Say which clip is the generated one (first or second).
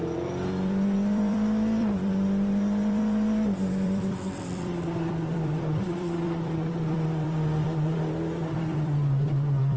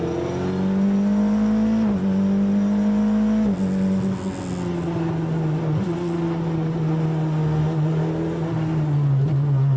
first